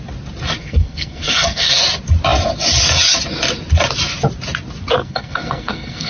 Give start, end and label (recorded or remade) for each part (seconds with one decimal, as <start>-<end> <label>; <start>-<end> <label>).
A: 0.0-0.6 recorded; 0.6-1.8 remade; 1.8-5.0 recorded; 5.0-6.1 remade